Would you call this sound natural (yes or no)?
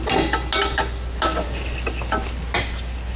yes